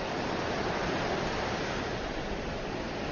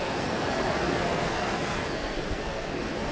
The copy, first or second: second